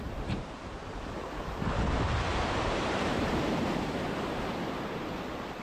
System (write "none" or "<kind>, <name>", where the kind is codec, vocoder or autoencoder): vocoder, BigVGAN v2